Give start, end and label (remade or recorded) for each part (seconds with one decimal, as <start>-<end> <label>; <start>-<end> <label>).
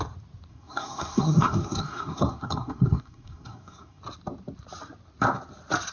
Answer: 0.0-0.5 recorded; 0.5-4.0 remade; 4.0-5.9 recorded